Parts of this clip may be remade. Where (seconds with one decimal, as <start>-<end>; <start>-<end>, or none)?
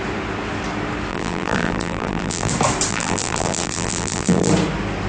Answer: 1.1-2.5; 2.9-4.5